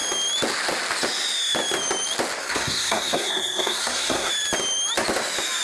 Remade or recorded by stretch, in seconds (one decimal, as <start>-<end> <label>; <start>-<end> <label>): 0.0-2.4 recorded; 2.4-4.3 remade; 4.3-5.6 recorded